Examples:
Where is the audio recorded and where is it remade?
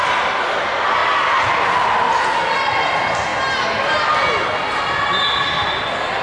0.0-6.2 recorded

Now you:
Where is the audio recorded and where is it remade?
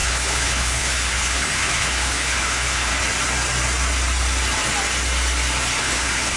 0.0-2.9 remade; 2.9-5.8 recorded; 5.8-6.4 remade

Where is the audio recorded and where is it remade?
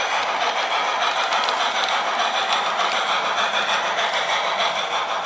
0.0-5.3 recorded